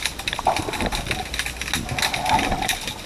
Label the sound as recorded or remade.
recorded